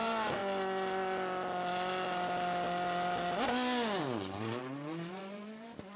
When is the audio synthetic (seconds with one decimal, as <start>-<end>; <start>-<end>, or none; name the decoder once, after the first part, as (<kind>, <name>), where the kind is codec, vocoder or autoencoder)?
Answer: 0.0-0.4 (vocoder, BigVGAN v2); 4.0-6.0